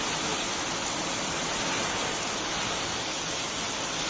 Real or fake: real